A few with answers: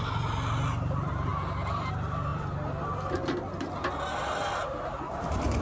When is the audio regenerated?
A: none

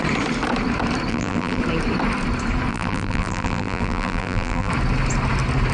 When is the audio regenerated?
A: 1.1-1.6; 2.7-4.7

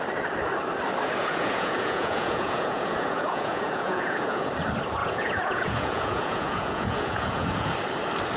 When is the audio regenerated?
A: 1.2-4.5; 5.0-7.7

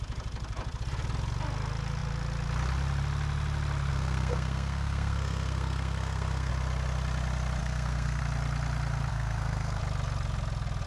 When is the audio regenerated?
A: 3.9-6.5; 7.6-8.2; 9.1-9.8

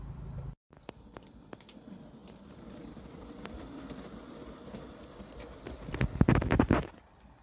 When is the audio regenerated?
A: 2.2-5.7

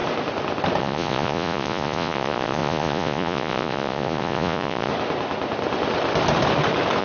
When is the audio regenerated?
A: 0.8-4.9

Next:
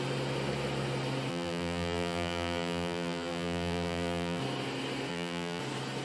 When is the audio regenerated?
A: 1.3-4.4; 5.1-5.6